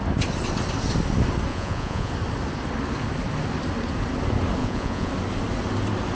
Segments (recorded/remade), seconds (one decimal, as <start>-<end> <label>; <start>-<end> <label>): 0.0-1.5 recorded; 1.5-2.1 remade; 2.1-4.6 recorded; 4.6-5.1 remade; 5.1-6.1 recorded